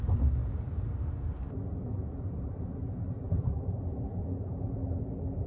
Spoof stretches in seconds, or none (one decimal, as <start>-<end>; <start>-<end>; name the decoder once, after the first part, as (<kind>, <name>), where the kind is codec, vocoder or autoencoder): none